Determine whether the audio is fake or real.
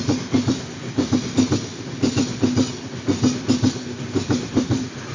real